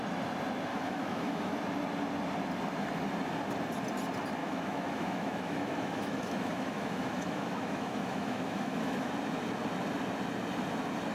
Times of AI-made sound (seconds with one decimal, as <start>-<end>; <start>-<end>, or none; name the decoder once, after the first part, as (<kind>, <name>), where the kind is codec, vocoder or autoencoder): 0.7-1.6 (autoencoder, DAC-VAE); 4.4-9.1